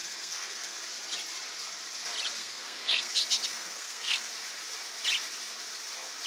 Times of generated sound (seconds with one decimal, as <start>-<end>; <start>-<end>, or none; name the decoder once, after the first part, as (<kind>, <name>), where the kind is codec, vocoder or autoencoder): 0.0-0.8 (codec, SNAC); 2.4-3.1; 3.5-4.3